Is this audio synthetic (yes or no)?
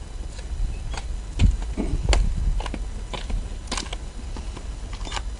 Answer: no